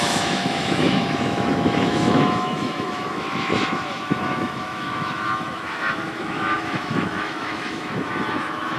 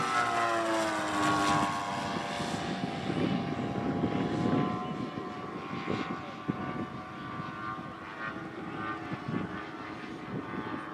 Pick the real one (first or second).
second